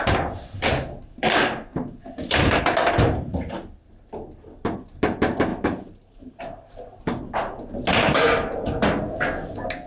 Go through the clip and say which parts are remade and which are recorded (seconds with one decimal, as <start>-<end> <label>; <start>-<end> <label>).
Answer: 0.0-1.7 recorded; 1.7-2.6 remade; 2.6-5.5 recorded; 5.5-6.4 remade; 6.4-7.9 recorded; 7.9-9.0 remade; 9.0-9.9 recorded